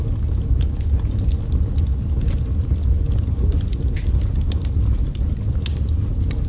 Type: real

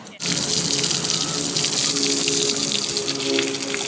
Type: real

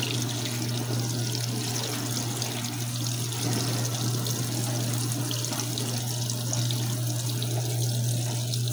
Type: real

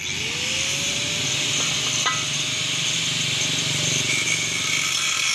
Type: real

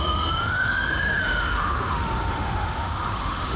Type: fake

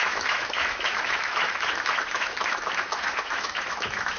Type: fake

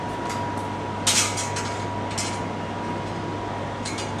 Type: real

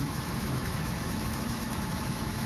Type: fake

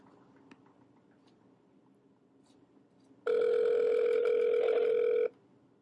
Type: real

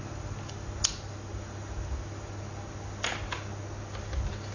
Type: real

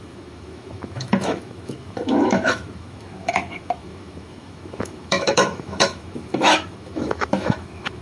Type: fake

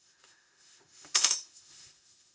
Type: fake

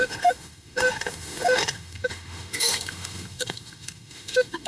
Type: fake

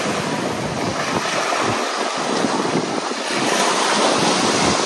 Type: real